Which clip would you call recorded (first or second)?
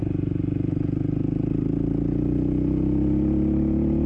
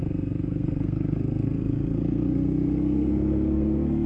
first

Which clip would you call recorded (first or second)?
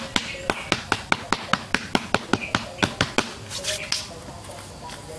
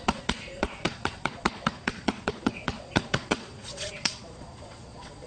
first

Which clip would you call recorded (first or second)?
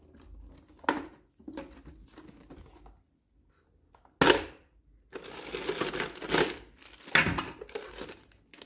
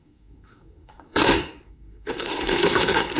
first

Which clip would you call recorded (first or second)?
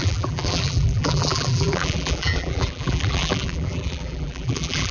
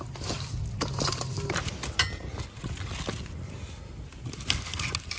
second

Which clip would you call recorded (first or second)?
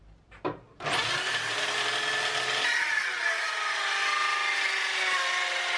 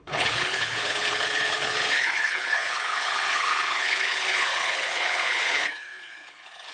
first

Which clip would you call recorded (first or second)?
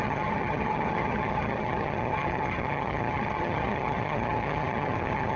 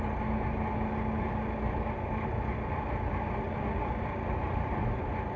second